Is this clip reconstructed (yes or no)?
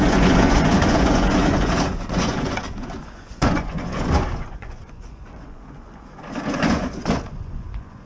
yes